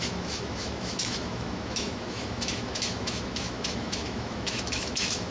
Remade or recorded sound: remade